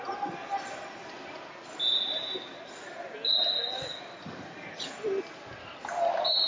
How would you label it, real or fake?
real